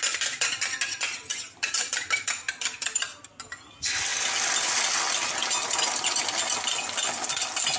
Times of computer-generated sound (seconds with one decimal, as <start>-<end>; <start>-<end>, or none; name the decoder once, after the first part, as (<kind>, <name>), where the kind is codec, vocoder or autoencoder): 1.3-1.9 (vocoder, BigVGAN v2)